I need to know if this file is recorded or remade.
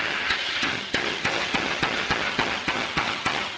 remade